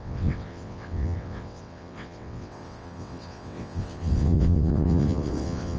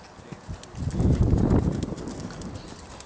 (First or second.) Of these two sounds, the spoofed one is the first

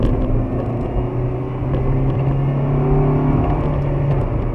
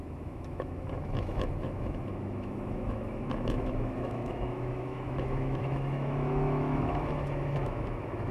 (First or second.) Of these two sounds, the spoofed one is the second